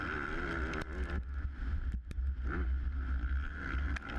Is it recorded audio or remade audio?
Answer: recorded